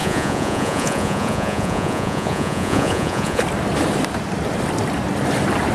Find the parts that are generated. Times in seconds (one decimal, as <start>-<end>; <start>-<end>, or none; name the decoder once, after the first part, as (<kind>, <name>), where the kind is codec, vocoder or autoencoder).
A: 0.0-3.4 (vocoder, Vocos)